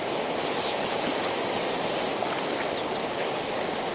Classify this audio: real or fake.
real